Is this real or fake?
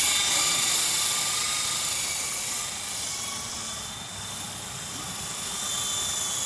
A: real